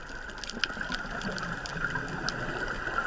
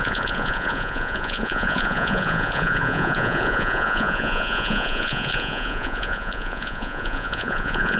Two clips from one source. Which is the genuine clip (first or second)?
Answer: first